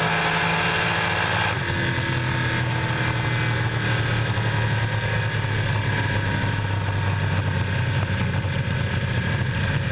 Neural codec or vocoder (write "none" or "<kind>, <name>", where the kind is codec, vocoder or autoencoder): none